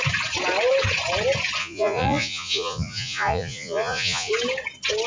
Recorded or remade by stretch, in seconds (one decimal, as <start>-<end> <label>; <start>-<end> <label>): 0.0-1.6 recorded; 1.6-4.3 remade; 4.3-5.1 recorded